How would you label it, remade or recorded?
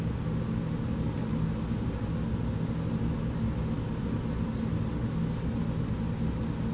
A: recorded